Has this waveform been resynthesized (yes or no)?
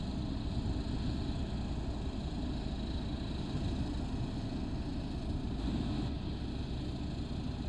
no